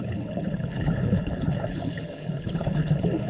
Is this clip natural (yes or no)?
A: no